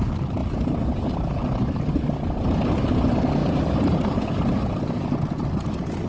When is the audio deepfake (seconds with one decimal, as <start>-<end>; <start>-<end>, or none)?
0.4-1.4; 3.4-4.2

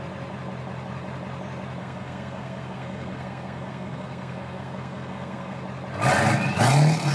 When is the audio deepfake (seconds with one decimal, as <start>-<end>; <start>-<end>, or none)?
1.8-5.6

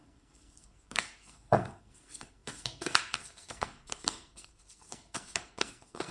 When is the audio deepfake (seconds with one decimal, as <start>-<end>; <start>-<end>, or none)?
0.0-6.1

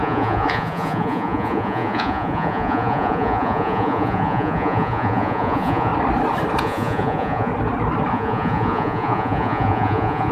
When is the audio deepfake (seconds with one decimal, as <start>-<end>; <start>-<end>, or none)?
0.0-5.9; 6.6-7.5; 8.1-10.3

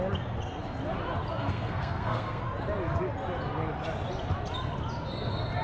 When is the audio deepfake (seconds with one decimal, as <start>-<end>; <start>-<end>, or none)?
1.4-2.4

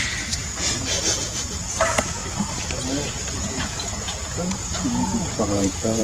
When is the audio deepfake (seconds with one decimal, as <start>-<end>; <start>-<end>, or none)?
0.0-2.2; 3.3-6.0

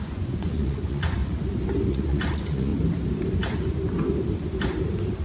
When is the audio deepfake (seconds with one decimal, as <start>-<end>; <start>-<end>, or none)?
0.0-1.2; 1.9-2.7

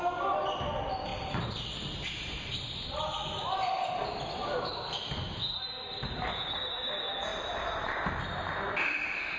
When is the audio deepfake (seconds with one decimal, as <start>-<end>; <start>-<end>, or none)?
none